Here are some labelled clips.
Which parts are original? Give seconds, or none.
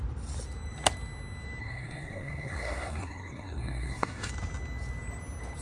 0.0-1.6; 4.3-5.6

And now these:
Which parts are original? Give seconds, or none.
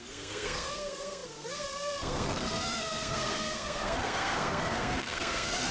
none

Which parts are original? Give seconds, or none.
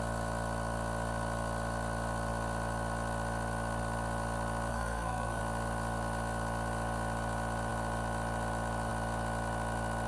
0.0-4.7; 5.4-10.1